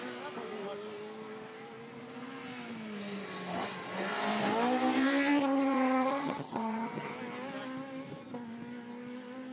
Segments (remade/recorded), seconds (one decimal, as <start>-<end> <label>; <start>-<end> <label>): 0.0-5.4 recorded; 5.4-7.1 remade; 7.1-9.5 recorded